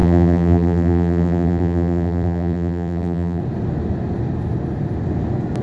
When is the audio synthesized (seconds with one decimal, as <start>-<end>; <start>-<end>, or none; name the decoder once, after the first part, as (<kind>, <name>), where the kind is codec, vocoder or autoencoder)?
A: 0.0-3.4 (vocoder, BigVGAN v2)